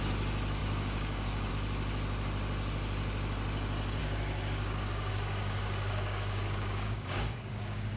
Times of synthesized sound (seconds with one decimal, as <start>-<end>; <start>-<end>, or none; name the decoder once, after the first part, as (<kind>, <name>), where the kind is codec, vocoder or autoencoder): 0.6-1.5 (codec, DAC); 4.0-8.0